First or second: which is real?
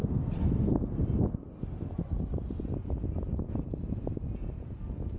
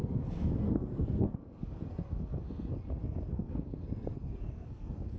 first